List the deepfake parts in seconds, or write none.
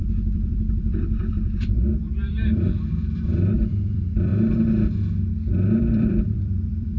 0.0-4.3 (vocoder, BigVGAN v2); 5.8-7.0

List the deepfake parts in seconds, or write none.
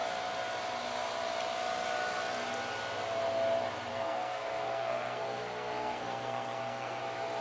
3.9-7.0 (codec, SNAC)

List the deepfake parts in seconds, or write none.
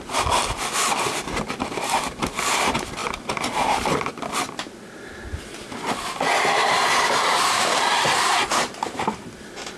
6.6-9.0 (vocoder, BigVGAN v2)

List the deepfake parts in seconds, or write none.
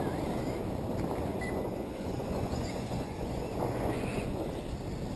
1.3-4.4 (vocoder, Vocos)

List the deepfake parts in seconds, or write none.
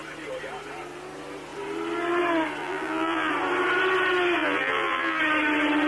2.6-3.3 (vocoder, BigVGAN v2); 4.4-5.2